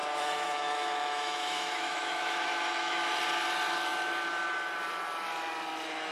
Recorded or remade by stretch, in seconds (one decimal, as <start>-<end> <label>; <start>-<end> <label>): 0.0-3.2 remade; 3.2-6.1 recorded

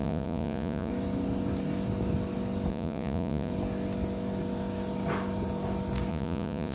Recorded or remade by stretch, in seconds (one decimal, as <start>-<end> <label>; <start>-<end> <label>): 0.0-0.9 remade; 0.9-2.7 recorded; 2.7-3.5 remade; 3.5-6.1 recorded; 6.1-6.7 remade

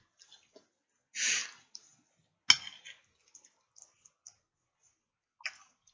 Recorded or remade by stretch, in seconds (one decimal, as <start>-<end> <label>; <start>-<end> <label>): 0.0-5.9 recorded

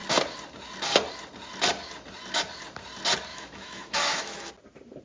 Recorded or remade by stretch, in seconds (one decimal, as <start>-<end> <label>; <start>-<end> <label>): 0.0-3.3 recorded; 3.3-4.5 remade; 4.5-5.0 recorded

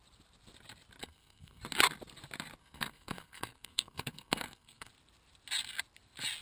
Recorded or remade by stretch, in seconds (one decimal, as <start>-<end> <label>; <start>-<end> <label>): 0.0-1.0 recorded; 1.0-1.6 remade; 1.6-2.6 recorded; 2.6-4.9 remade; 4.9-6.4 recorded

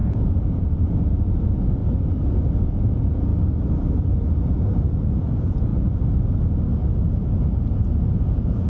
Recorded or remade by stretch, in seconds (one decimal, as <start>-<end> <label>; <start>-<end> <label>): 0.0-1.8 remade; 1.8-2.6 recorded; 2.6-3.3 remade; 3.3-4.9 recorded; 4.9-5.7 remade; 5.7-8.0 recorded; 8.0-8.7 remade

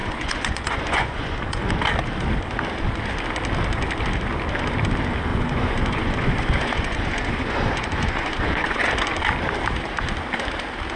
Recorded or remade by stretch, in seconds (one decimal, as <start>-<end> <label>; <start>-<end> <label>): 0.0-1.7 remade; 1.7-5.3 recorded; 5.3-8.9 remade; 8.9-11.0 recorded

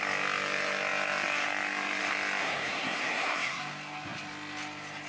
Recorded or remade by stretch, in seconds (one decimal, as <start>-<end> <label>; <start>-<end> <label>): 0.0-2.4 recorded; 2.4-3.6 remade; 3.6-5.1 recorded